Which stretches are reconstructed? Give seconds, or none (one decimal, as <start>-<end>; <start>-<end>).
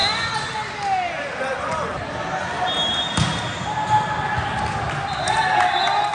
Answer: none